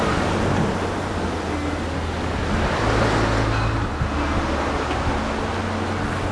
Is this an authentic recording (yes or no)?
yes